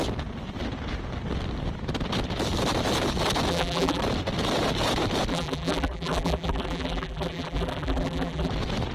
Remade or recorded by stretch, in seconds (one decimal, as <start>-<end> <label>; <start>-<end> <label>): 0.0-3.5 recorded; 3.5-4.0 remade; 4.0-5.3 recorded; 5.3-8.5 remade; 8.5-8.9 recorded